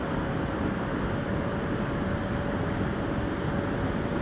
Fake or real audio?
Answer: real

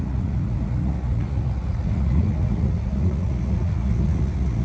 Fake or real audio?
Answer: fake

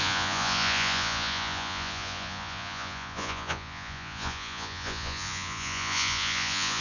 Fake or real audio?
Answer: fake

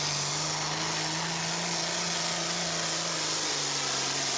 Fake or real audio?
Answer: real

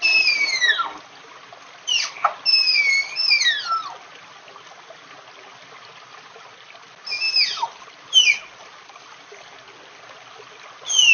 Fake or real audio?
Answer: real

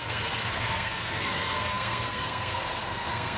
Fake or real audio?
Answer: fake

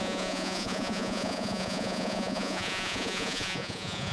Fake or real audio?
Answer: fake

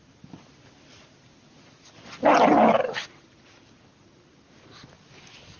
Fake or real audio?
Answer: real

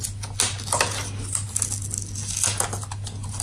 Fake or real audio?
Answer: real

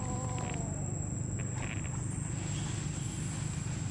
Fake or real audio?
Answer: real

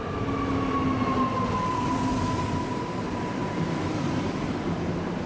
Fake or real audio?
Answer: real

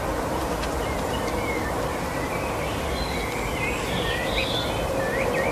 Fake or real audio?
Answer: real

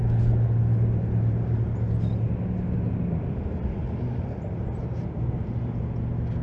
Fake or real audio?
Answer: real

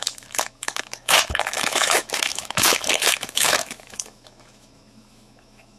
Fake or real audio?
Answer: fake